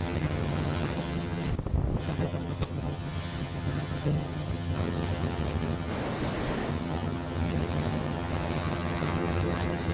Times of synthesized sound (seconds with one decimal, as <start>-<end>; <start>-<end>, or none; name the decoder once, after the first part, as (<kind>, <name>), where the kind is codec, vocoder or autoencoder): 0.0-1.5 (vocoder, HiFi-GAN); 2.0-5.9; 6.7-9.9